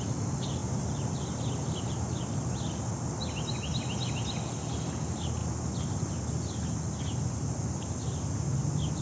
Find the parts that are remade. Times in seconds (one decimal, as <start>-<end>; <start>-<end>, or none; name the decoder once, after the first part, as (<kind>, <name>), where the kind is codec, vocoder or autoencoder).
0.6-1.4 (vocoder, BigVGAN v2)